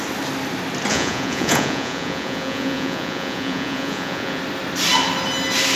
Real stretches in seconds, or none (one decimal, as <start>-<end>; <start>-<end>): 0.0-0.9; 4.4-5.8